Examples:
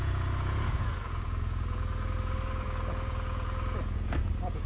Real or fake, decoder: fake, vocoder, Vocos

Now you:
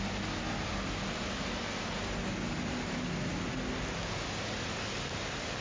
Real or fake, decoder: real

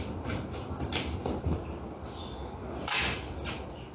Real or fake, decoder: real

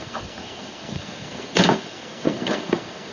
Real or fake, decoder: fake, codec, SNAC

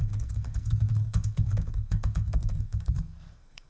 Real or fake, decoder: fake, codec, SNAC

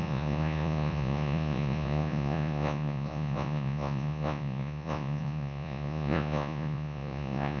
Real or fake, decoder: fake, vocoder, Vocos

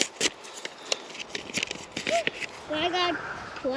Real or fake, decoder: real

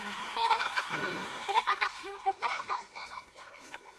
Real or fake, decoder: fake, codec, SNAC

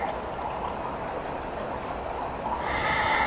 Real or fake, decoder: real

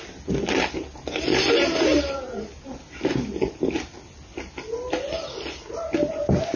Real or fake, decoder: real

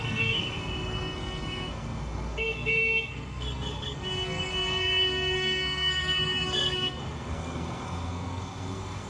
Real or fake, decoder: fake, codec, SNAC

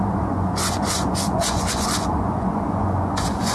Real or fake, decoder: fake, vocoder, Vocos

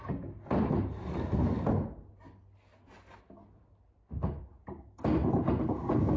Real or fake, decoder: real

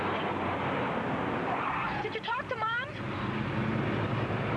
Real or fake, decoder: real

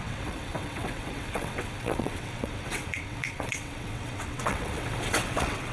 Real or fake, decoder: fake, vocoder, WaveNeXt